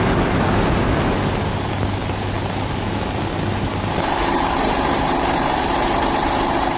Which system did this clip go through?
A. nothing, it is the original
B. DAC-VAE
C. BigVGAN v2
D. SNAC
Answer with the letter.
A